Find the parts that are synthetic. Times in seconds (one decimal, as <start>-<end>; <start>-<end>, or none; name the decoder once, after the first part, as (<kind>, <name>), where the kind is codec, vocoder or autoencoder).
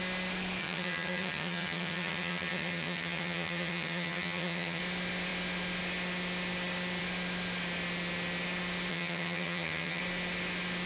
0.6-4.8 (vocoder, HiFi-GAN); 8.9-10.0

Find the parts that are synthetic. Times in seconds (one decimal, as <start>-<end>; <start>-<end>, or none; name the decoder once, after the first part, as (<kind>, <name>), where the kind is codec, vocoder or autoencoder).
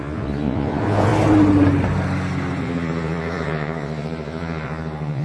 0.0-1.1 (vocoder, Vocos); 2.6-5.2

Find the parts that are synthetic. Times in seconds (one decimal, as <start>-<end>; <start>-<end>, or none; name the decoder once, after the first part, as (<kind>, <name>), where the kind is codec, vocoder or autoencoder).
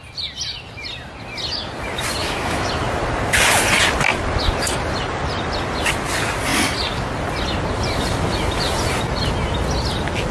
2.2-2.7 (autoencoder, DAC-VAE)